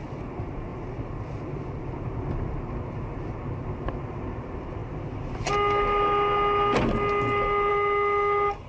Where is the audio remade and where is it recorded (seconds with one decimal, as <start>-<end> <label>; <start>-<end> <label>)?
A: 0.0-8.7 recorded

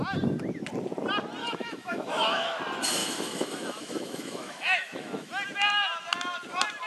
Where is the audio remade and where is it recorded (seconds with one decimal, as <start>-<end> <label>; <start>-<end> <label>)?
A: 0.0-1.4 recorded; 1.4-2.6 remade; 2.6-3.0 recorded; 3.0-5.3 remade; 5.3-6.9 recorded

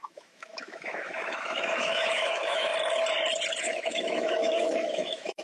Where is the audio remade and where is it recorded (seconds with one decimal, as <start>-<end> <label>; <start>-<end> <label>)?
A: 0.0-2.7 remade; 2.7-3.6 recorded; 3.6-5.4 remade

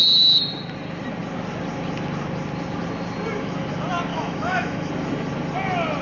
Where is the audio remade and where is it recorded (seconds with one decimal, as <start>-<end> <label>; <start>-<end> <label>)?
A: 0.0-4.1 recorded; 4.1-4.9 remade; 4.9-6.0 recorded

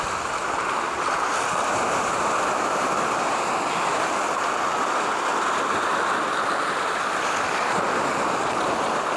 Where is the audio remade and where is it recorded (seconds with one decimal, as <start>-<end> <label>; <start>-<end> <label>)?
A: 0.0-9.2 recorded

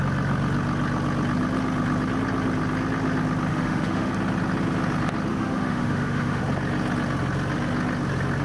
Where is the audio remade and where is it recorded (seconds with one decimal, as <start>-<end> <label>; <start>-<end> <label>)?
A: 0.0-3.5 recorded; 3.5-4.1 remade; 4.1-5.3 recorded; 5.3-6.4 remade; 6.4-8.4 recorded